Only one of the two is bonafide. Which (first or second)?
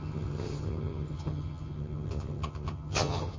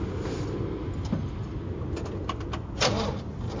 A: second